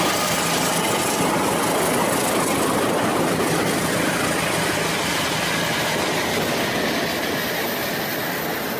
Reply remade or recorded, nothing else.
recorded